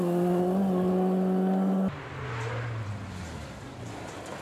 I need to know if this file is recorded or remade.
recorded